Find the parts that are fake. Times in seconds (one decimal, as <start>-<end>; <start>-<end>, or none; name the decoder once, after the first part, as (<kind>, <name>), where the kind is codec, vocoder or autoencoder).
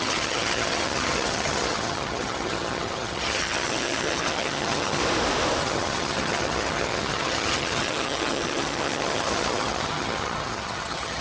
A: 0.0-5.0 (vocoder, HiFi-GAN); 5.6-11.2